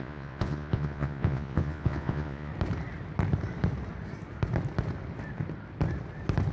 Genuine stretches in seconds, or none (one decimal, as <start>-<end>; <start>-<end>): 2.5-6.5